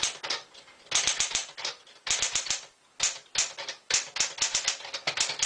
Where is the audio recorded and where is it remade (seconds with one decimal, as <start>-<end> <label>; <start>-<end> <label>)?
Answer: 0.0-5.5 recorded